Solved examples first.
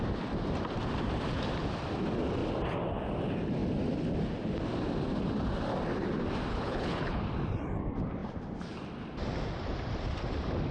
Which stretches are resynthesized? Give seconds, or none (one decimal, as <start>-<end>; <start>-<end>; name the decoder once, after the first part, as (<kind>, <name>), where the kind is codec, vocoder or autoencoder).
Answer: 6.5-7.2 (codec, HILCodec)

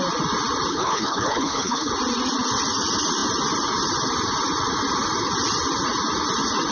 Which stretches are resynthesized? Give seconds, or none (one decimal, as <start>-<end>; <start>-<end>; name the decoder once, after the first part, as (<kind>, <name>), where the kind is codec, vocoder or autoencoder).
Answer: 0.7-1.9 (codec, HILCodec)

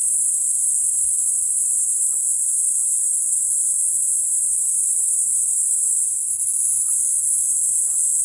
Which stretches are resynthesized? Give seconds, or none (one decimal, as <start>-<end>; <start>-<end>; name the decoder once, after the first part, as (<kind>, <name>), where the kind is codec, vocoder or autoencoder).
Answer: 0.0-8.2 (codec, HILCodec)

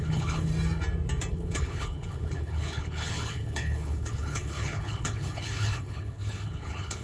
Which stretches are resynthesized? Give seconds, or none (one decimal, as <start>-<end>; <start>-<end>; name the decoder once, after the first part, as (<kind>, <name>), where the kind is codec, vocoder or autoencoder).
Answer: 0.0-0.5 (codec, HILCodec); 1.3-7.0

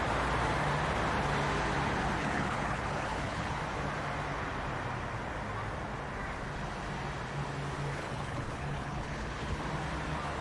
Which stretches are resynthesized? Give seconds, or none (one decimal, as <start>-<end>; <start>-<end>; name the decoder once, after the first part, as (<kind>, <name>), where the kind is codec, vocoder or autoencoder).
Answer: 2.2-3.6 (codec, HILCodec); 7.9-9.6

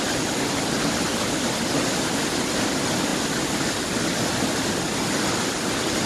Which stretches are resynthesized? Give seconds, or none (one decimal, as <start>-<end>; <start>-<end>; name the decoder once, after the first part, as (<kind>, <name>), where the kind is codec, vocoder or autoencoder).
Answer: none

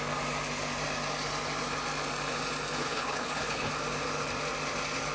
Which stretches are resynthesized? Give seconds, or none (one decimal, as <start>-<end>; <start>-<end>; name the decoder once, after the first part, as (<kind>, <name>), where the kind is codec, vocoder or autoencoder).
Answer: 2.8-3.7 (codec, HILCodec)

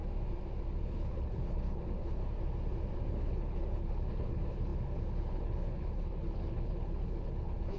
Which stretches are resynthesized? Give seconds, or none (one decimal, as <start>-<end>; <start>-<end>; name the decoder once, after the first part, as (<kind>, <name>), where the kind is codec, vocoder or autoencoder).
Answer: 0.8-2.2 (codec, HILCodec); 3.1-7.8